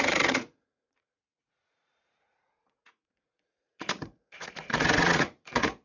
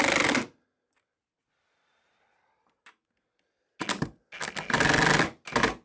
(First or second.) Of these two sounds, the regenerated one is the first